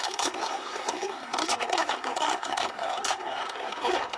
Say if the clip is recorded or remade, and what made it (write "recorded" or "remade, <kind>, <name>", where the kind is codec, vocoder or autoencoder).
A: remade, codec, SNAC